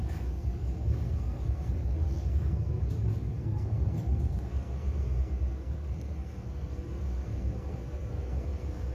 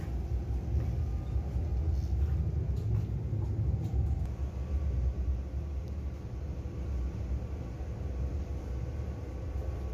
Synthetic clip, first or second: first